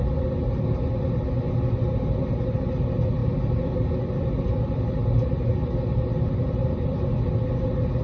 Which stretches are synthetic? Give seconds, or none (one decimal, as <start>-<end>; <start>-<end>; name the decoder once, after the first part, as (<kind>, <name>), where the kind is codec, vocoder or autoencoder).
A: 3.2-4.9 (vocoder, BigVGAN v2)